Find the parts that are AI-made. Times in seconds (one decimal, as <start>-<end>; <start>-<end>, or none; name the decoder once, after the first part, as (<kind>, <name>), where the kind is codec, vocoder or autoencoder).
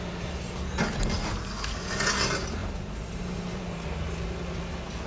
2.6-3.6 (vocoder, BigVGAN v2)